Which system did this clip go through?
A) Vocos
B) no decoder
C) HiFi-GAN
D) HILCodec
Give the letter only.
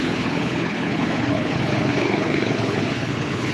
D